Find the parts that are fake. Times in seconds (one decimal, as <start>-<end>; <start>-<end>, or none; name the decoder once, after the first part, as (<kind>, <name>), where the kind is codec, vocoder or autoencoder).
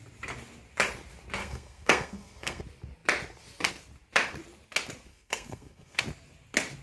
1.4-2.6 (codec, SNAC); 5.1-6.0